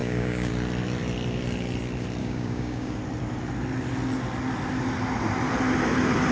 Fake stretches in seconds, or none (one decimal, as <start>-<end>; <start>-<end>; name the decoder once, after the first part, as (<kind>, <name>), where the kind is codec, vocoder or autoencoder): 0.0-0.5 (codec, DAC); 2.2-3.0